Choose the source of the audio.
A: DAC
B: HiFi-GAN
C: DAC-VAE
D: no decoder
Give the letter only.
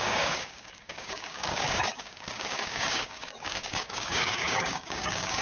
A